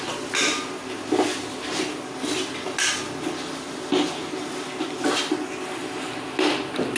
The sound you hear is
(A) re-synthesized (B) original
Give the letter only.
B